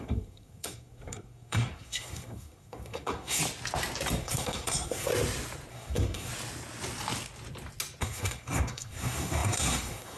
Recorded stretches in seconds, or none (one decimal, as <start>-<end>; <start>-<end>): 3.4-4.2; 5.1-5.7; 6.3-8.0